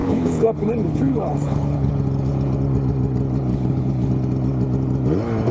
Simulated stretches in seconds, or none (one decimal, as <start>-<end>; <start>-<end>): 0.0-1.9; 3.5-4.1